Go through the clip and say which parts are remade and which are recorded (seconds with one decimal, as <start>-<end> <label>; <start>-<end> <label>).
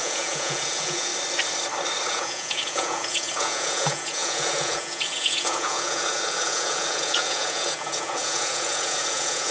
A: 0.0-1.1 remade; 1.1-2.1 recorded; 2.1-9.5 remade